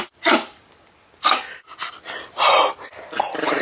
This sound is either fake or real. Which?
real